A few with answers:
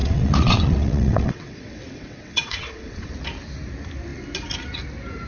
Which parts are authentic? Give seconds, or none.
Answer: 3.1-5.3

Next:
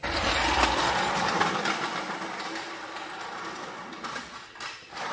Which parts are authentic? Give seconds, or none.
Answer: 3.1-5.1

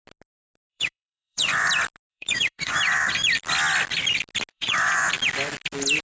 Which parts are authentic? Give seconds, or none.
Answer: 0.0-0.7; 1.7-2.1; 2.8-4.5; 5.1-6.0

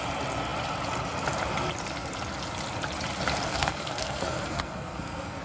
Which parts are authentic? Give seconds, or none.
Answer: 0.0-3.5